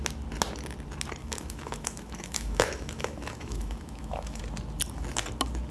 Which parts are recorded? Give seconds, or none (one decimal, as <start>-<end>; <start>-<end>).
0.0-1.2; 4.4-5.7